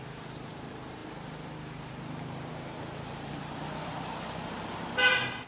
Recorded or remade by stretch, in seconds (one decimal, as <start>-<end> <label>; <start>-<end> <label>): 0.0-5.5 recorded